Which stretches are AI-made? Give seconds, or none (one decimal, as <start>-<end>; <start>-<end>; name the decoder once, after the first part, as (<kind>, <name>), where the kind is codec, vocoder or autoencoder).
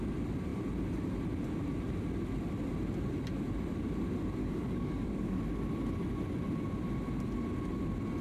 4.4-5.4 (codec, DAC)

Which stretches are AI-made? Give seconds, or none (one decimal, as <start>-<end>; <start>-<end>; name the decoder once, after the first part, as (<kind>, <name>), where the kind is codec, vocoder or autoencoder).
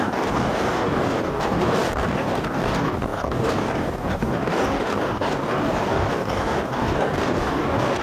0.0-8.0 (codec, DAC)